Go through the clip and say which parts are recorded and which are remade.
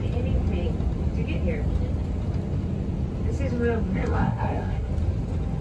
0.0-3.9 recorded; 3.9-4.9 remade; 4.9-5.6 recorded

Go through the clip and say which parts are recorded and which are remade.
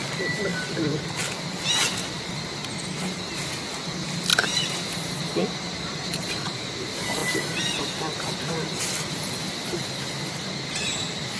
0.0-11.4 recorded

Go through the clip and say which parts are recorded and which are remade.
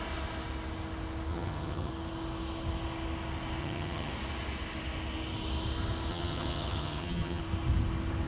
0.0-1.3 recorded; 1.3-1.9 remade; 1.9-3.6 recorded; 3.6-4.1 remade; 4.1-6.1 recorded; 6.1-7.4 remade; 7.4-8.3 recorded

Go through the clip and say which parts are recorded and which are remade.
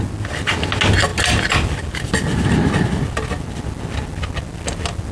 0.0-5.1 recorded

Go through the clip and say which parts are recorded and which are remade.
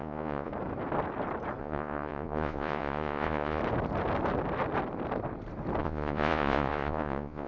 0.0-0.5 remade; 0.5-1.6 recorded; 1.6-3.6 remade; 3.6-5.8 recorded; 5.8-7.5 remade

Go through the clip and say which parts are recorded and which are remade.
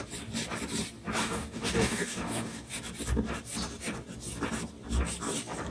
0.0-1.2 recorded; 1.2-2.7 remade; 2.7-5.7 recorded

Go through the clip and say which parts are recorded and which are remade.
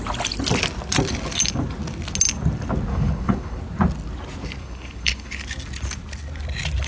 0.0-2.9 recorded; 2.9-3.6 remade; 3.6-4.6 recorded; 4.6-5.4 remade; 5.4-6.9 recorded